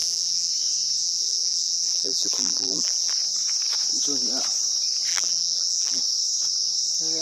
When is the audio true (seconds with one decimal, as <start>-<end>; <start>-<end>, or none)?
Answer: 0.5-1.0; 3.1-5.1; 6.0-7.2